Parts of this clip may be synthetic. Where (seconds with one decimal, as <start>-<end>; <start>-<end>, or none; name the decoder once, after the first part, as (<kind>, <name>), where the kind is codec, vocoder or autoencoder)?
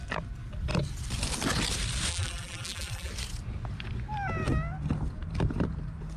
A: 2.1-3.1 (vocoder, BigVGAN v2)